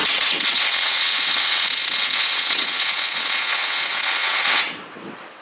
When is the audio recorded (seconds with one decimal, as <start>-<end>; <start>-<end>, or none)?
none